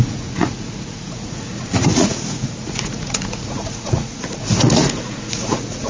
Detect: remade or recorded remade